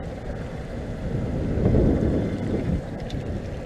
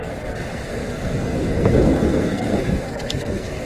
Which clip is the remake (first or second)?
second